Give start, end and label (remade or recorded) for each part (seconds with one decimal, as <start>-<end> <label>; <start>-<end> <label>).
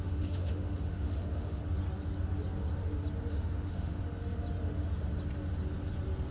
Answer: 0.0-1.6 remade; 1.6-3.3 recorded; 3.3-4.0 remade; 4.0-6.3 recorded